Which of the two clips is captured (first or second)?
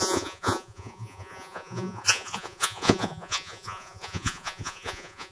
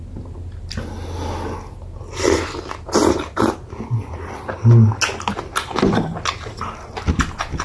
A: second